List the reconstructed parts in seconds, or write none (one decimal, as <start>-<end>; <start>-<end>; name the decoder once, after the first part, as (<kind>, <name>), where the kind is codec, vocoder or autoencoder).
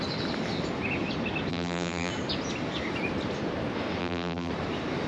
1.5-2.1 (vocoder, BigVGAN v2); 4.0-4.5